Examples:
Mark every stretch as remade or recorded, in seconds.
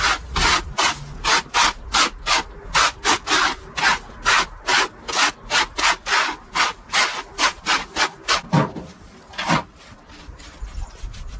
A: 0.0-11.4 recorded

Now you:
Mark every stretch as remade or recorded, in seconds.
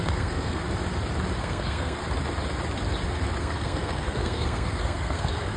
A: 0.0-0.6 remade; 0.6-1.4 recorded; 1.4-2.0 remade; 2.0-3.4 recorded; 3.4-5.6 remade